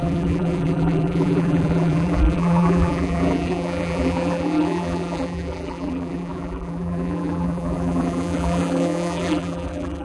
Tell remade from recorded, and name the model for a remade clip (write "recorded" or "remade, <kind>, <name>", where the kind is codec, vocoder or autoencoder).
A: remade, vocoder, BigVGAN v2